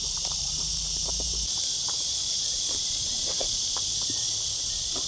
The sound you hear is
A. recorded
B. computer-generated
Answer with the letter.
B